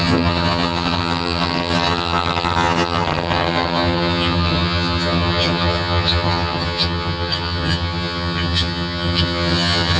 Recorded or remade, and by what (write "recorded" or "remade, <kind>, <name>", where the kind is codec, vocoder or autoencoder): remade, vocoder, HiFi-GAN